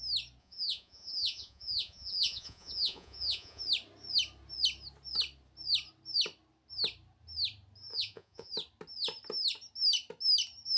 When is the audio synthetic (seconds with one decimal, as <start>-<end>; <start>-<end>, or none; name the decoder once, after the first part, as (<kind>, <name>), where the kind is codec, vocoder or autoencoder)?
0.4-3.6 (vocoder, Vocos); 7.9-8.5